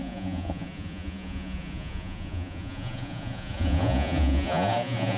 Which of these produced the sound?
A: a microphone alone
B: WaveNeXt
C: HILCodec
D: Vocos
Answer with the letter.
D